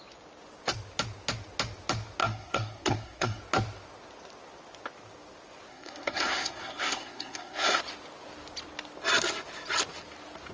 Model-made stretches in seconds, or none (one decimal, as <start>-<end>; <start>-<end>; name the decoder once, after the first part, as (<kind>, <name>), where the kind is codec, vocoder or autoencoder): 2.2-3.4 (codec, SNAC); 5.7-7.8

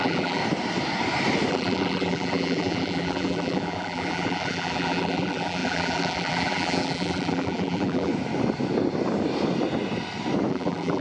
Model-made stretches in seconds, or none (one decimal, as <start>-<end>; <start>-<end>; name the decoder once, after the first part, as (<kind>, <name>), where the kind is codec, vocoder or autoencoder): 0.0-0.4 (vocoder, BigVGAN v2); 1.5-8.1; 10.5-11.0

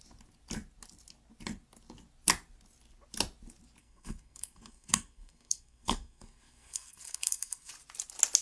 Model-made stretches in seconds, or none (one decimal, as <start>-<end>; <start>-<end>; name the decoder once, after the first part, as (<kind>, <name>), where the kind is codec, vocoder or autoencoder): 3.8-7.7 (codec, SNAC)

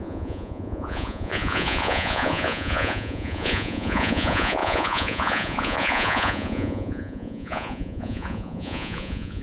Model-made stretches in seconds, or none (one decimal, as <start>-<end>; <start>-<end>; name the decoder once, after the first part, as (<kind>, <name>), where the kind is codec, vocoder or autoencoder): 0.0-9.4 (vocoder, Vocos)

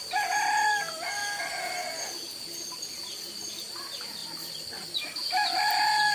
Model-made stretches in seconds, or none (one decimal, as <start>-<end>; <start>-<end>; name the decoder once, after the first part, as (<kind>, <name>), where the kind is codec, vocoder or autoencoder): none

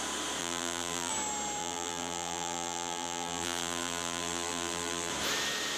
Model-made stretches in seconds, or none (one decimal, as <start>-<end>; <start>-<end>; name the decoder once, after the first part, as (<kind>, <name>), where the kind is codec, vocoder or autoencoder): 0.4-1.1 (vocoder, BigVGAN v2); 1.6-5.1